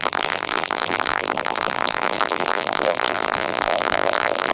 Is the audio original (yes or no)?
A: no